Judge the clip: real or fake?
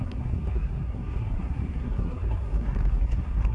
fake